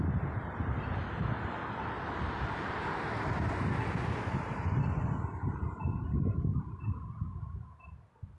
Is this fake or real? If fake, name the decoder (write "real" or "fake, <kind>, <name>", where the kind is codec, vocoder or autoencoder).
real